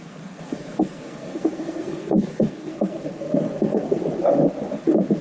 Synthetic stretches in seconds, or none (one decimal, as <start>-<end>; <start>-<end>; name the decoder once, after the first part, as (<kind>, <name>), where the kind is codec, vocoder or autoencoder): 0.0-4.0 (codec, SNAC); 4.7-5.2